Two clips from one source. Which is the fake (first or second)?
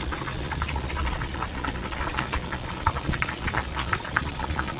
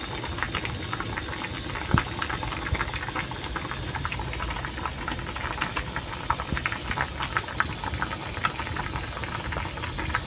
first